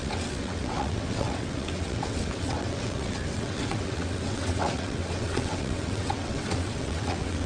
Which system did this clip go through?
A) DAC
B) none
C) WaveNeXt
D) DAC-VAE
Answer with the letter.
C